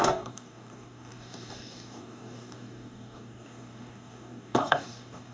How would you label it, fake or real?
fake